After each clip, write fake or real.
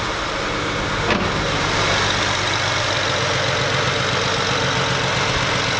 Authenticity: real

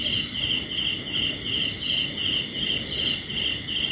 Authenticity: real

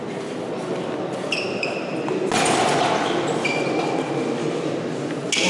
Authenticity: real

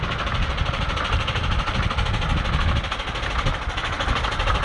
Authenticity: real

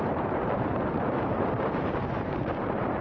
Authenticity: fake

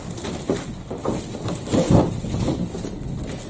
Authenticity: real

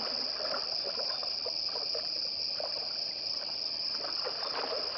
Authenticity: real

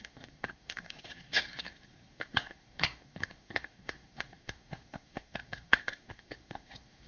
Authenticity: fake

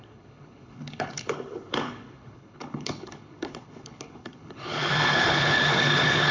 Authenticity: fake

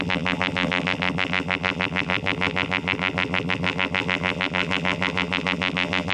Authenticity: fake